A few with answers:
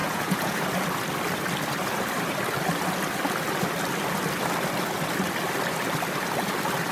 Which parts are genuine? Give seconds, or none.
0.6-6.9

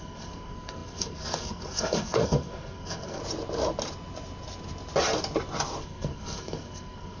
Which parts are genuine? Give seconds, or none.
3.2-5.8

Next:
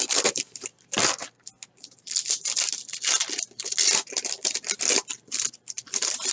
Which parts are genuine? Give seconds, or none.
0.7-4.2